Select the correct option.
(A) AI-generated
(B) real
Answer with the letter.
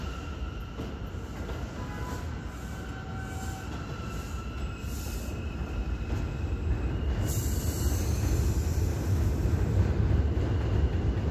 B